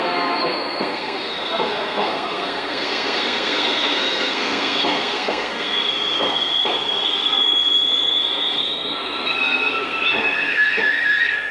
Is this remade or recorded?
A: remade